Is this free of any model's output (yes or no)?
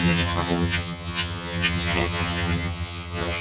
no